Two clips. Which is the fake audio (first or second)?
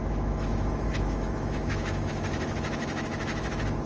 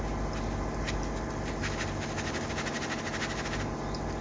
first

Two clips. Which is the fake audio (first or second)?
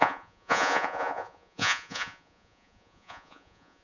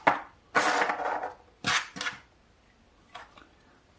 first